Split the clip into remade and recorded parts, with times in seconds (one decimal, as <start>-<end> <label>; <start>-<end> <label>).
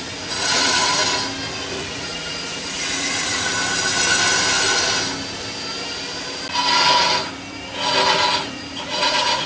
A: 0.0-1.0 remade; 1.0-1.7 recorded; 1.7-3.5 remade; 3.5-8.4 recorded; 8.4-9.5 remade